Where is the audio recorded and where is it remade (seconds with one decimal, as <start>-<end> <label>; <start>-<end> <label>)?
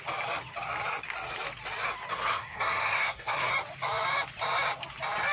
0.0-2.1 recorded; 2.1-3.5 remade; 3.5-5.3 recorded